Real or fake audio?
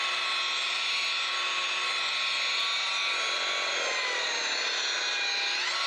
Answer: real